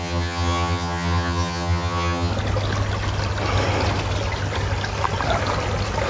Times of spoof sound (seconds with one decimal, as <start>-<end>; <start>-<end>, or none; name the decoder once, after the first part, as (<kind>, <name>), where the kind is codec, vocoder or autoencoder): 0.0-2.3 (vocoder, HiFi-GAN)